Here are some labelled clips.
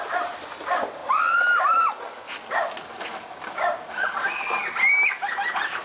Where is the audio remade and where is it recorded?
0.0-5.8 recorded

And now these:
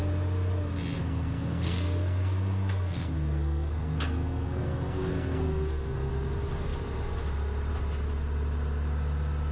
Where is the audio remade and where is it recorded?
0.0-1.0 recorded; 1.0-6.1 remade; 6.1-9.5 recorded

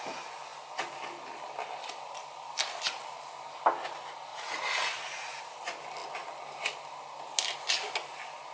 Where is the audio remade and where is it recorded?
0.0-4.3 recorded; 4.3-5.4 remade; 5.4-8.5 recorded

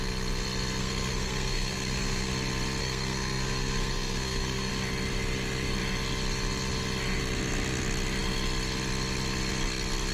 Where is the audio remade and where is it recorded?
0.0-0.8 recorded; 0.8-2.3 remade; 2.3-2.8 recorded; 2.8-4.7 remade; 4.7-10.1 recorded

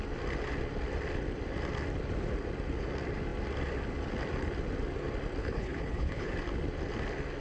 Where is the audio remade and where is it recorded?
0.0-5.4 recorded; 5.4-6.3 remade; 6.3-7.4 recorded

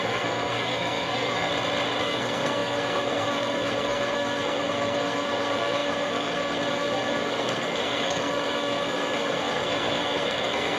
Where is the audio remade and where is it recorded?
0.0-1.5 remade; 1.5-2.0 recorded; 2.0-10.8 remade